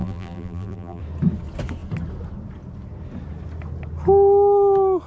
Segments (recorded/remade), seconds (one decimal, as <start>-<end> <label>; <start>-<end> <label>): 0.0-1.0 remade; 1.0-5.1 recorded